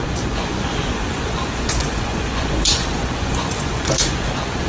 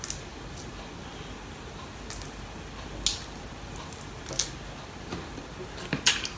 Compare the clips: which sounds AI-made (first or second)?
first